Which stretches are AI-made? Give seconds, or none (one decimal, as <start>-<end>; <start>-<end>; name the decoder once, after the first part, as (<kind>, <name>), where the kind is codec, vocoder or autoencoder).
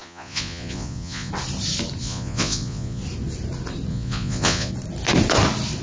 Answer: 0.0-1.3 (vocoder, Vocos); 2.0-3.0; 3.9-4.7